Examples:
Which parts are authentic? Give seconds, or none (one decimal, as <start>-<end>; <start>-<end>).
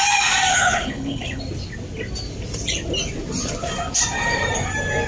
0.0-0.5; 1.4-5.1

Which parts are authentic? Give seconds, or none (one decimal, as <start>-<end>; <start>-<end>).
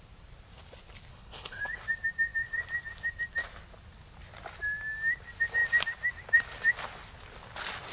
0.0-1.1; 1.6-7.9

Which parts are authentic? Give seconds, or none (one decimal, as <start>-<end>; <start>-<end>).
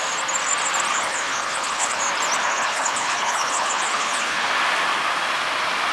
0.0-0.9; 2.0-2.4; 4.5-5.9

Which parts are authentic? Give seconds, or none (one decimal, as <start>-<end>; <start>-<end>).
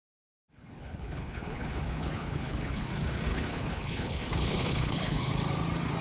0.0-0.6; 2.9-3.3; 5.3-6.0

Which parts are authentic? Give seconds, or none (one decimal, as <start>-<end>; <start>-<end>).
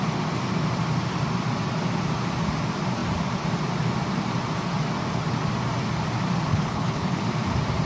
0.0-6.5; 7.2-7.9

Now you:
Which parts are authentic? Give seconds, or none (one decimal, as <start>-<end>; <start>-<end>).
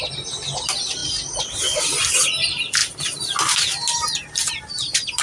0.0-5.2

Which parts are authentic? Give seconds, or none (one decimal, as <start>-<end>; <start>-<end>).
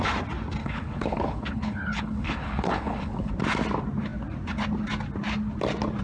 0.0-0.6; 3.3-6.0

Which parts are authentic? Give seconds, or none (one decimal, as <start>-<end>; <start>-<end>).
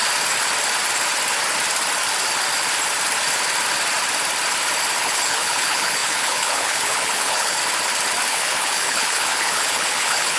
0.0-5.0; 7.6-8.3